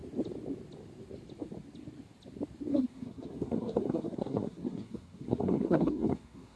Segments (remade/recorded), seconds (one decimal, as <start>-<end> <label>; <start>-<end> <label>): 0.0-2.7 recorded; 2.7-6.6 remade